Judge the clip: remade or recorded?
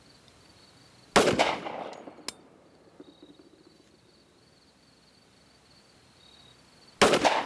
recorded